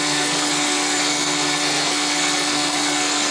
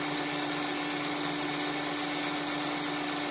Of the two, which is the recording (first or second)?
second